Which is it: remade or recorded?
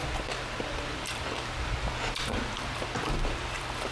remade